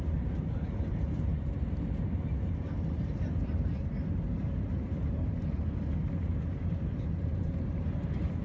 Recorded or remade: remade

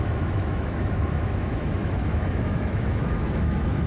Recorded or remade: remade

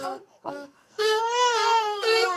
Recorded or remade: remade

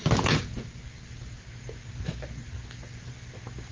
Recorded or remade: recorded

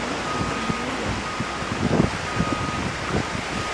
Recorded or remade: recorded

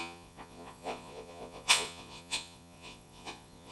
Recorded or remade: remade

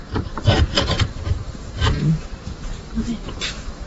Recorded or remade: recorded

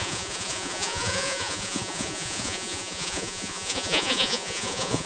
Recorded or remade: remade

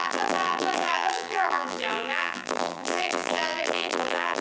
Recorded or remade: remade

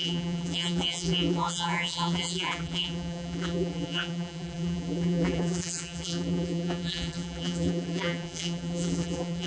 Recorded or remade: remade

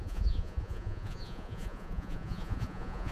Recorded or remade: remade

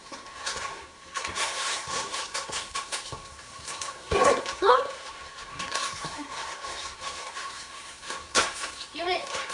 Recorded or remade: remade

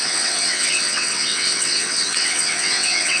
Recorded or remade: remade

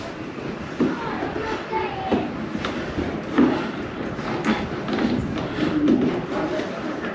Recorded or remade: recorded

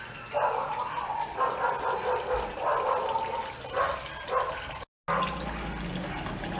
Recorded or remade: recorded